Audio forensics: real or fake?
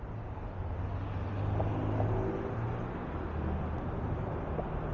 real